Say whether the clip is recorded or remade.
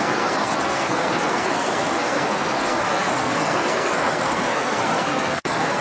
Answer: remade